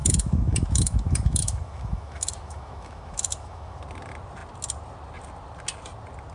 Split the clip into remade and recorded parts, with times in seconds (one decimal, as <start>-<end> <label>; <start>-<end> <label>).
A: 0.0-3.8 remade; 3.8-6.3 recorded